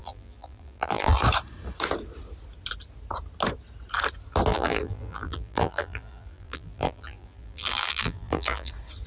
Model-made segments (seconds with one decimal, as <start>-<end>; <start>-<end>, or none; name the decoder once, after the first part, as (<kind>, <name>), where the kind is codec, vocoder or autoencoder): 0.0-1.2 (vocoder, BigVGAN v2); 4.5-8.7